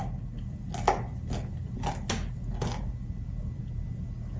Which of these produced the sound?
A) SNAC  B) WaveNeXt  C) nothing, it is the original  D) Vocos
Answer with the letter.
C